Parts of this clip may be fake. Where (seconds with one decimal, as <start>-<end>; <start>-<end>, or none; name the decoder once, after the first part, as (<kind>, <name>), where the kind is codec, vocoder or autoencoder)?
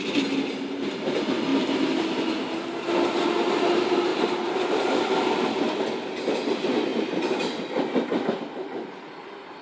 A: 4.1-5.6 (vocoder, BigVGAN v2); 6.9-7.5